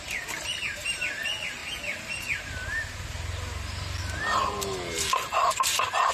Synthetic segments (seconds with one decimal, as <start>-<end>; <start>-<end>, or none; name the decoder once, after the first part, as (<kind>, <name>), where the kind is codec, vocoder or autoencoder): 0.0-1.6 (vocoder, BigVGAN v2); 4.0-6.1